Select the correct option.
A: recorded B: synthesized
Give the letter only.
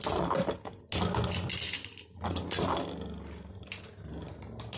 A